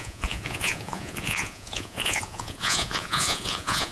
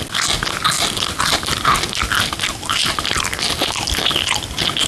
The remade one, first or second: first